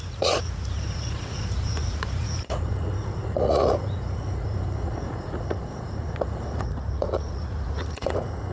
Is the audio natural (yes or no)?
no